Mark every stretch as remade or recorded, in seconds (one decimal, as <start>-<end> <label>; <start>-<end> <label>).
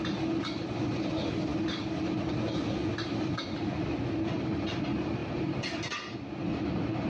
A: 0.0-7.1 recorded